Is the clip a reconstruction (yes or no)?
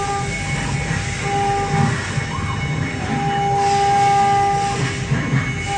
no